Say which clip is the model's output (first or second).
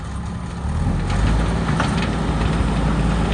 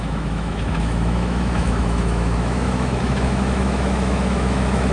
second